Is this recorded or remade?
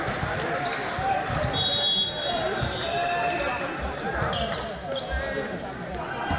recorded